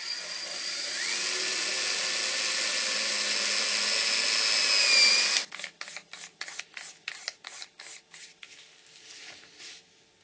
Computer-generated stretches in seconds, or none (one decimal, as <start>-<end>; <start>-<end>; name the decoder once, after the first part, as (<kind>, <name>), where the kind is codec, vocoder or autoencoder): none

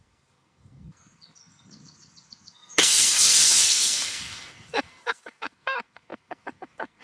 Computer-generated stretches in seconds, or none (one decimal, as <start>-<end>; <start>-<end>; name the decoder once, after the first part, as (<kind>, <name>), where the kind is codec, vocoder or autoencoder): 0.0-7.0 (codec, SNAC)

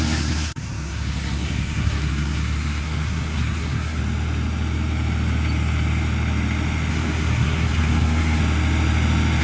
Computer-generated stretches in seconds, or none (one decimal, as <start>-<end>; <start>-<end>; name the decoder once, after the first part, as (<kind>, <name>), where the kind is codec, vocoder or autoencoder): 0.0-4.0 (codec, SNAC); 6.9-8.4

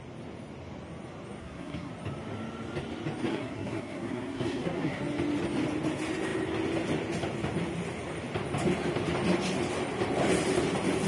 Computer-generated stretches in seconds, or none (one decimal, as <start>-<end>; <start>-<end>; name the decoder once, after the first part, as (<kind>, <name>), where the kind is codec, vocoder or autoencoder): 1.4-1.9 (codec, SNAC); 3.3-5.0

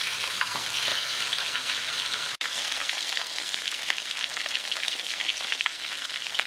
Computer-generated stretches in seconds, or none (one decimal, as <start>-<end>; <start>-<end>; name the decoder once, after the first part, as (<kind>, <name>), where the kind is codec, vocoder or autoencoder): 0.0-6.5 (codec, SNAC)

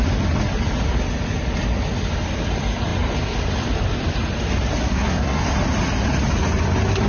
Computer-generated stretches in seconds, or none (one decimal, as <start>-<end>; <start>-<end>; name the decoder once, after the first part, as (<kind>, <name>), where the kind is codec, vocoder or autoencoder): 4.8-5.4 (codec, SNAC)

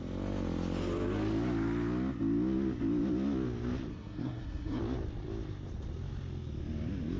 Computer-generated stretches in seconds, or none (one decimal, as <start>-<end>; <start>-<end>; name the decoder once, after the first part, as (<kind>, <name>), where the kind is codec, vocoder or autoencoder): 3.9-4.8 (codec, SNAC)

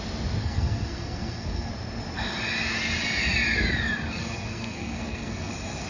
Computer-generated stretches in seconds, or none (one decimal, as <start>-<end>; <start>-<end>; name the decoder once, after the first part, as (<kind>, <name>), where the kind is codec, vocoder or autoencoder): 0.4-1.7 (codec, SNAC); 4.1-5.5